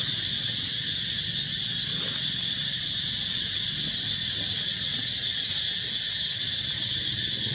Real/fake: real